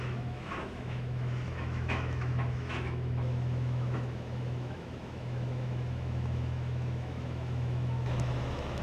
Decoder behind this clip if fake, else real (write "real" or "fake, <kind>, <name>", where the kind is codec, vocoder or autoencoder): fake, autoencoder, DAC-VAE